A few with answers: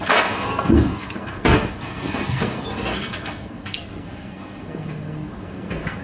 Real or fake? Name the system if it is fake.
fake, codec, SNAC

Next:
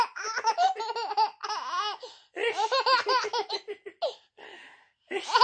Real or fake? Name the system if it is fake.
real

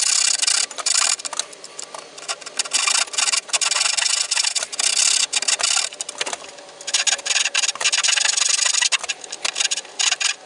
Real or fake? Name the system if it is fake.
real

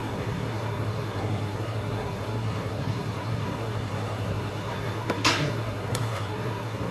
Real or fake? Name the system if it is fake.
fake, codec, SNAC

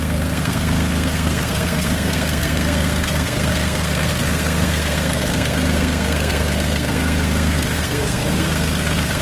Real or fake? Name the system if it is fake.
fake, codec, SNAC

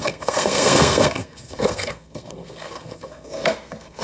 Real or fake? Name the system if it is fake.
fake, codec, SNAC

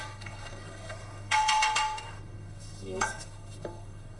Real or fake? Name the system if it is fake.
fake, codec, SNAC